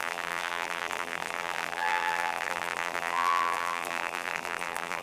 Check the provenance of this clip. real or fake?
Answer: fake